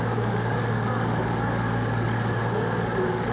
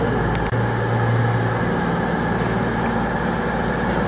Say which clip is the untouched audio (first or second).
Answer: second